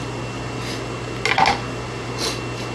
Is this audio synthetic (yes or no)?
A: no